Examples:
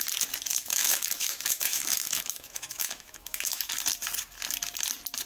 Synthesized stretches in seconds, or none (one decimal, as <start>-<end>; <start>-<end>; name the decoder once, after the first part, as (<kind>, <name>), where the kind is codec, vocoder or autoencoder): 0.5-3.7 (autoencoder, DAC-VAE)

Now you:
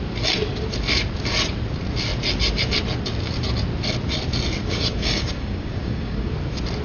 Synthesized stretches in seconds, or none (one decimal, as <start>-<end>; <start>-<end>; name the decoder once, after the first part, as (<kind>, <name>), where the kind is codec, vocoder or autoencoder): 4.6-6.3 (codec, DAC)

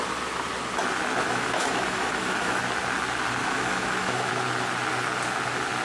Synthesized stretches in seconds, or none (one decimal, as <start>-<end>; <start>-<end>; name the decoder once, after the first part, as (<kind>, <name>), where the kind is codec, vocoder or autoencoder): 1.2-2.6 (autoencoder, DAC-VAE); 3.4-4.3

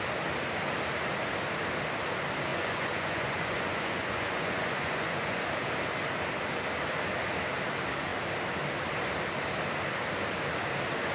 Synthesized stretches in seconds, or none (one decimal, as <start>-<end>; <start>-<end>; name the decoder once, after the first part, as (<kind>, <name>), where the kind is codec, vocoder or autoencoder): 2.5-5.4 (vocoder, Vocos)

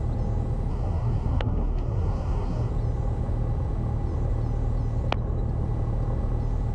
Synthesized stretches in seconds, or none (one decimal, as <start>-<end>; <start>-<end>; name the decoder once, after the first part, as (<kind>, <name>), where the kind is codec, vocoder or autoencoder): 0.7-2.7 (codec, SNAC)

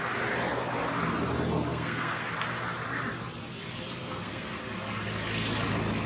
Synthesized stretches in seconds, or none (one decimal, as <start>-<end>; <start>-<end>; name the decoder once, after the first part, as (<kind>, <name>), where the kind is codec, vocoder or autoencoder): 1.7-2.3 (codec, SNAC); 4.0-4.6

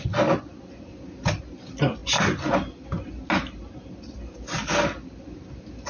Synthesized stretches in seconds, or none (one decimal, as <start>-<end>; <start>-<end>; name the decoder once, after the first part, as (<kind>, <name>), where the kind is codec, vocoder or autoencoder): 2.0-2.5 (vocoder, BigVGAN v2)

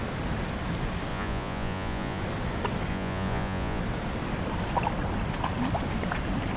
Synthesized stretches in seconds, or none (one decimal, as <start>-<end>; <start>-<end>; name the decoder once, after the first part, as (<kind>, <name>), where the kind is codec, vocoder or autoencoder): 1.1-2.2 (vocoder, Vocos); 2.9-3.8